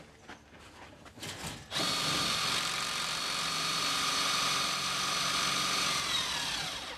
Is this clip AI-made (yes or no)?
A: no